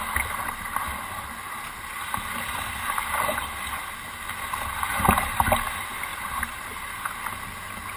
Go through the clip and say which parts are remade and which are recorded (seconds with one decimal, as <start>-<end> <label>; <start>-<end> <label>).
0.0-4.9 recorded; 4.9-5.5 remade; 5.5-6.1 recorded; 6.1-7.2 remade; 7.2-8.0 recorded